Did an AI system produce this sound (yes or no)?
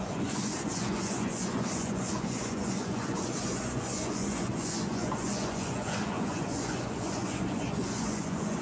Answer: yes